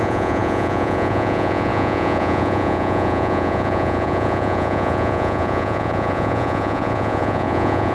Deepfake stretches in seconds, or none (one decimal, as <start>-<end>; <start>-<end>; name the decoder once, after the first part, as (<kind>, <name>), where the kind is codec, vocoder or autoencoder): 0.0-7.9 (vocoder, Vocos)